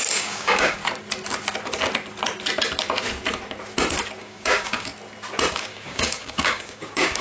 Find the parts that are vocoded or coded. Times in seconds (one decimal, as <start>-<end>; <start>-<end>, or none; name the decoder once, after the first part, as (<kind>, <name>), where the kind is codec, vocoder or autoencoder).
0.0-0.8 (codec, DAC); 4.2-4.9; 5.5-7.2